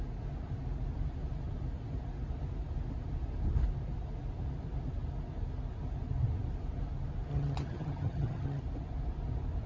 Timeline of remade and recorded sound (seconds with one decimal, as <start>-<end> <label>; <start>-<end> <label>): 0.0-7.3 recorded; 7.3-8.6 remade; 8.6-9.7 recorded